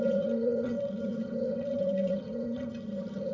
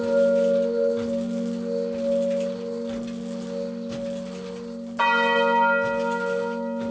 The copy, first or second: first